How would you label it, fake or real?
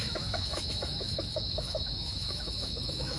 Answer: fake